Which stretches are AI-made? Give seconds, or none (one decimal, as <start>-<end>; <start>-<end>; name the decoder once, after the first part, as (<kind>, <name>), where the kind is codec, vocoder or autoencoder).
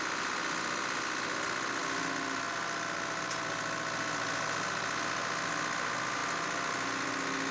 none